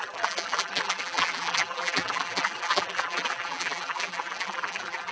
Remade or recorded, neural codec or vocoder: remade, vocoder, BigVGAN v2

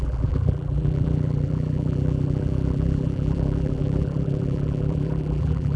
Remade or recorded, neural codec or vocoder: remade, vocoder, BigVGAN v2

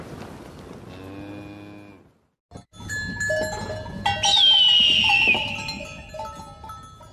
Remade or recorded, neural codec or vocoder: recorded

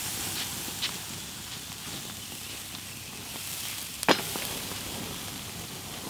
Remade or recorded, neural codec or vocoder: recorded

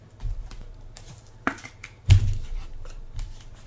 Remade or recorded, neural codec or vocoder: remade, vocoder, BigVGAN v2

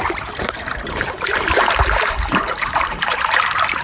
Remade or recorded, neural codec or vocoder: remade, vocoder, BigVGAN v2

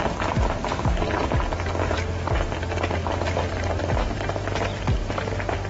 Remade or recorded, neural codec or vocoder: recorded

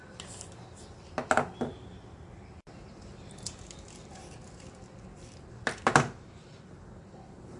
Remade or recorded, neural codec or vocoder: recorded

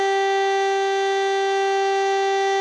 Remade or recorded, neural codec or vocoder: recorded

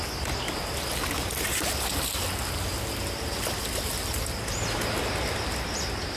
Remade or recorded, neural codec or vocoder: recorded